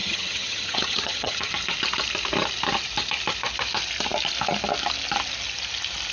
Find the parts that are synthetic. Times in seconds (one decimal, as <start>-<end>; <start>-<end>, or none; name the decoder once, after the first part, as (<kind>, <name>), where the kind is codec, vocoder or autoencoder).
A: 0.0-1.5 (vocoder, HiFi-GAN)